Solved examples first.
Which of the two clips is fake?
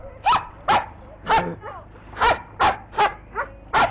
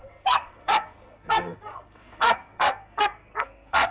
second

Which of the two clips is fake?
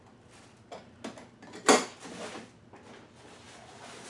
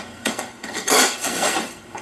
second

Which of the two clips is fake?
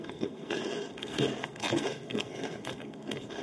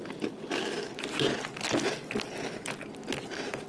first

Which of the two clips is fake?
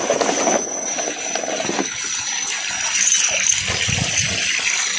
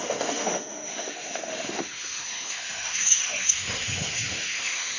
second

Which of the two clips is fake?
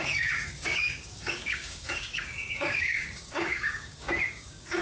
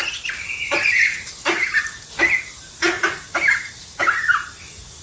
first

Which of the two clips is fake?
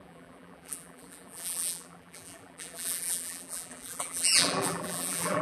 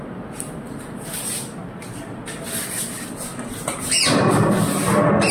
first